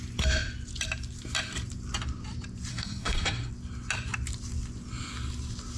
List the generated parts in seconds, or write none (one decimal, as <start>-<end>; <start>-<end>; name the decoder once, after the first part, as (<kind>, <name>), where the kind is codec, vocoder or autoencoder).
2.7-3.5 (codec, SNAC)

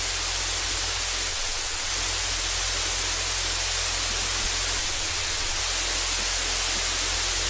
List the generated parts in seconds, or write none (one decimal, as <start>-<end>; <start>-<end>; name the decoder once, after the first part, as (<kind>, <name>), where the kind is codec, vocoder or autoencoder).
1.3-1.9 (vocoder, WaveNeXt); 4.8-5.6